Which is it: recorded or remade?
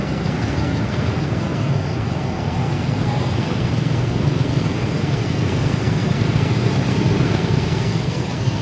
remade